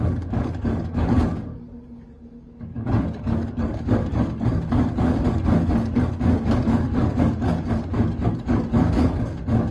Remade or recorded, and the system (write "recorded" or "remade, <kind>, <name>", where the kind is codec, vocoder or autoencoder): remade, codec, DAC